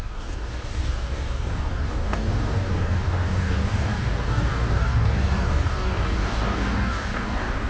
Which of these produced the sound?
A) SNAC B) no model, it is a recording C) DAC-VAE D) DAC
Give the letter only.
D